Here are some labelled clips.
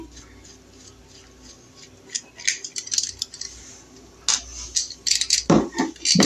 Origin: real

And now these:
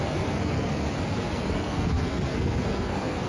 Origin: fake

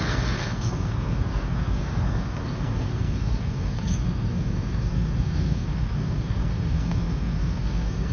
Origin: fake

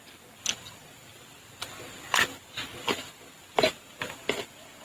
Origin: real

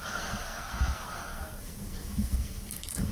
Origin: fake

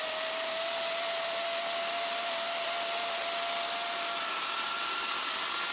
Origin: real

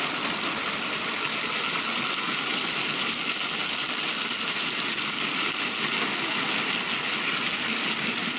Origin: real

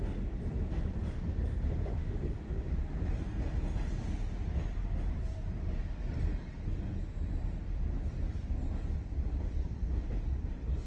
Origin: real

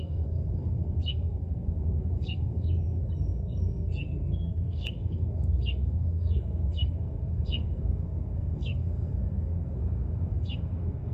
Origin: fake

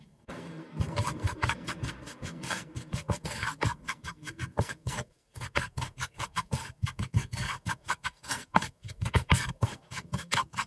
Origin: fake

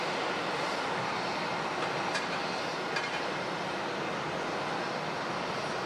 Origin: real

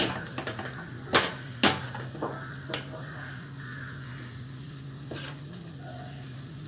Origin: real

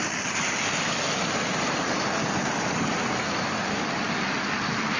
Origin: real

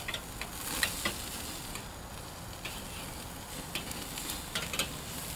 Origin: real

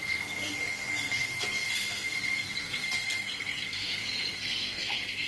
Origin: fake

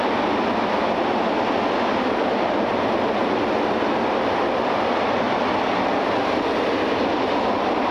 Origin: real